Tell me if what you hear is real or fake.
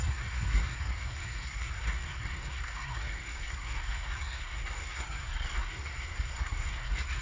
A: fake